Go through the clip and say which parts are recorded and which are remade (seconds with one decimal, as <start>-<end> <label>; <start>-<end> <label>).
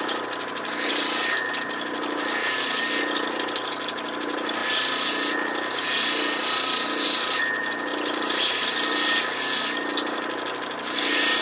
0.0-11.4 remade